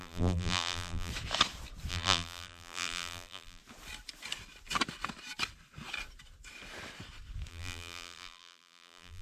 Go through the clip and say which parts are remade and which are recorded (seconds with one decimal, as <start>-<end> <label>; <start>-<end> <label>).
0.0-1.1 remade; 1.1-1.9 recorded; 1.9-3.6 remade; 3.6-7.5 recorded; 7.5-9.2 remade